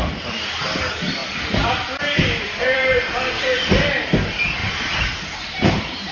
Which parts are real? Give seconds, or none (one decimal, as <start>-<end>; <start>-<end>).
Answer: 0.0-1.2; 3.1-6.1